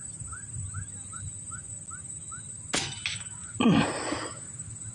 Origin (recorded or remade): recorded